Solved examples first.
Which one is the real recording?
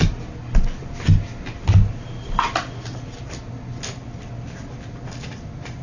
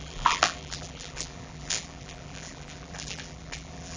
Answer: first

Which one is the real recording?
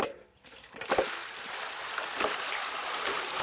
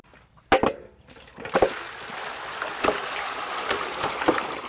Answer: second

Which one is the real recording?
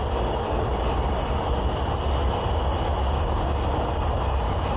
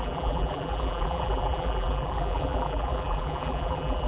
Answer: first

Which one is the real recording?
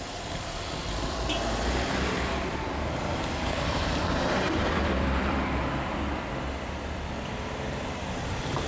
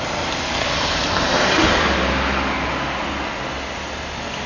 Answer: second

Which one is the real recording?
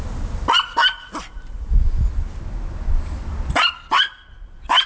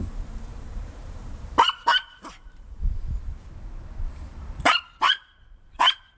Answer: first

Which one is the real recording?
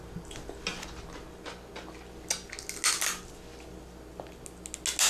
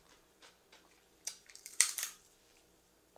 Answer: first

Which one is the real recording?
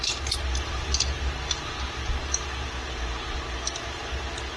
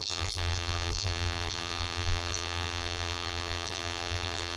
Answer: first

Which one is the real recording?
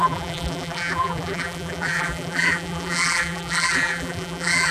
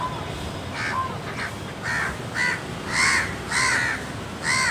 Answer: second